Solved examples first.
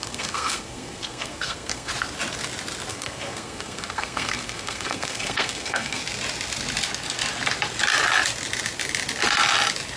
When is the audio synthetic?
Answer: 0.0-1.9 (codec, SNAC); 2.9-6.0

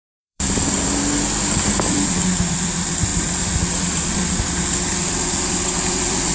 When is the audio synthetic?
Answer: 0.0-1.0 (vocoder, BigVGAN v2); 1.9-4.2; 5.1-6.3

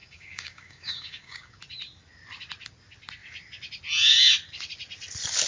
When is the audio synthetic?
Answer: 0.0-1.6 (codec, DAC)

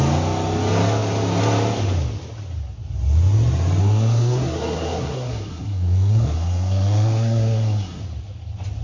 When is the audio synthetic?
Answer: 3.8-8.0 (codec, SNAC)

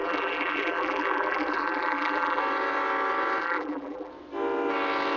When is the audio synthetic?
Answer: 0.0-2.4 (vocoder, BigVGAN v2); 3.4-4.1

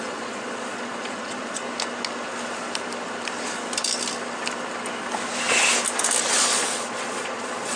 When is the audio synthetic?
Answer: 0.0-1.6 (vocoder, Vocos); 6.3-7.8

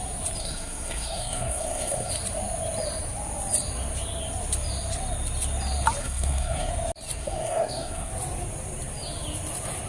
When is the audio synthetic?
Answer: 0.4-2.1 (codec, SNAC); 6.0-6.7; 7.2-8.1